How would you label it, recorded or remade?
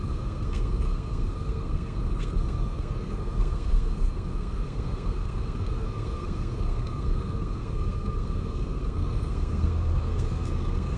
remade